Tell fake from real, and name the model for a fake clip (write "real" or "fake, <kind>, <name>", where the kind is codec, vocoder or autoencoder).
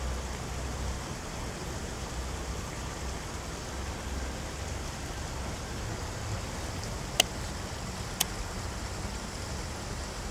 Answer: real